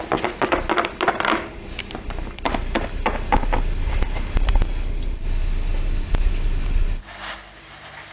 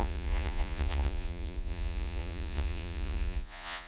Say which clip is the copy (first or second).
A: second